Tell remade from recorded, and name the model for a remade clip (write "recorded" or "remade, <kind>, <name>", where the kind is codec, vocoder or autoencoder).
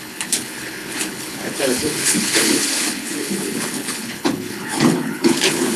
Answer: remade, codec, HILCodec